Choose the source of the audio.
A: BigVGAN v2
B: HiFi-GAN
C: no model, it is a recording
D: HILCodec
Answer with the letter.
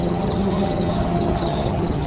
B